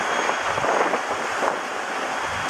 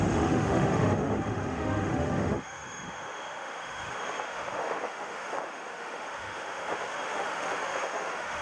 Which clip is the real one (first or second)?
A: first